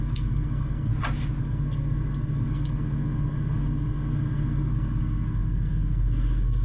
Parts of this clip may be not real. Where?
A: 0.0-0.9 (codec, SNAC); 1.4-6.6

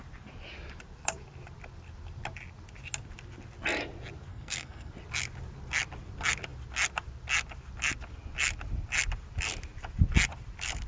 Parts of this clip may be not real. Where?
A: 4.3-4.9 (codec, SNAC)

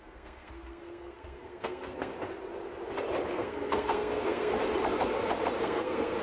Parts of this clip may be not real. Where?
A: 0.0-2.1 (codec, SNAC); 3.3-4.5; 5.6-6.2

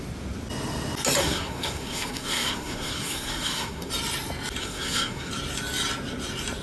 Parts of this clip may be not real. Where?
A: 1.2-3.9 (codec, SNAC); 4.6-5.3

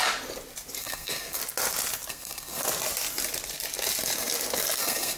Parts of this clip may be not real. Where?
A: 0.8-1.4 (codec, SNAC); 2.1-2.6; 4.8-5.2